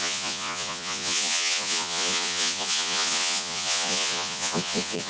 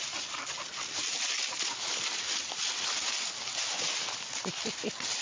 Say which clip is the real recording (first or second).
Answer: second